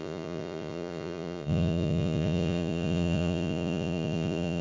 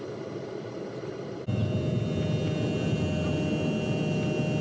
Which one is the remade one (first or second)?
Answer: first